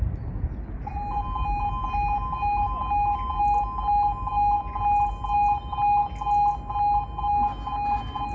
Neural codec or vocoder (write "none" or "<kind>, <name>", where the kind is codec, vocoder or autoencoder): none